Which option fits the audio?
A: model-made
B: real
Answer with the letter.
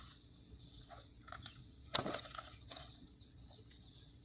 A